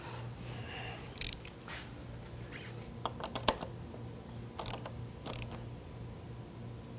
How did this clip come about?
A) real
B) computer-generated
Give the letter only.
A